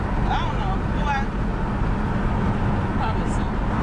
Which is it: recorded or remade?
recorded